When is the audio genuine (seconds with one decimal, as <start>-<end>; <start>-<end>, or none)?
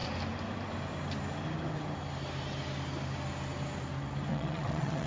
0.0-4.3